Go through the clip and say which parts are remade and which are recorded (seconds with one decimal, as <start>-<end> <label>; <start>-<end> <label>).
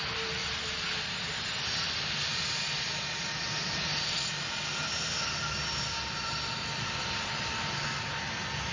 0.0-8.7 recorded